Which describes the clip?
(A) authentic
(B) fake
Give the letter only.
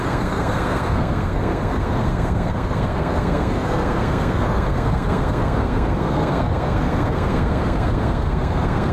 B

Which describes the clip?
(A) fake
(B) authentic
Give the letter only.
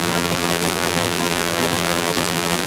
A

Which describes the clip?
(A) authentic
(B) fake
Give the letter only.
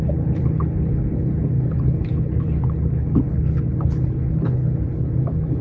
B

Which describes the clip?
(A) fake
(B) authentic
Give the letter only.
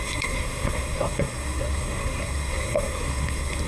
A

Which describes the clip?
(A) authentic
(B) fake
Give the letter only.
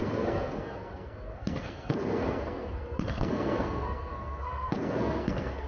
B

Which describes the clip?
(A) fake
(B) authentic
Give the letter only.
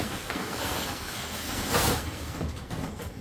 A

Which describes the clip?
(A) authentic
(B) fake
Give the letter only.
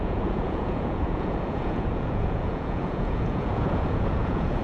B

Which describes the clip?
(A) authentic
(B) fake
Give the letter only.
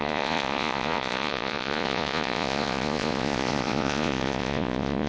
B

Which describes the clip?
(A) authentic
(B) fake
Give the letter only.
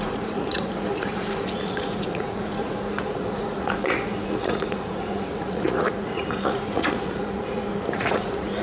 B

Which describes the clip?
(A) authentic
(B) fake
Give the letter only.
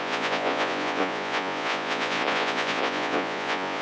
B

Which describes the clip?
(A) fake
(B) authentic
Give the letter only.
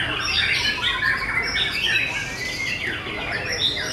B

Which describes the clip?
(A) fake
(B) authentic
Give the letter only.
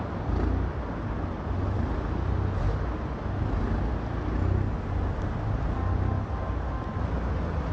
B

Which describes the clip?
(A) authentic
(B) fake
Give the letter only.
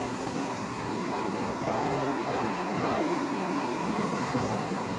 B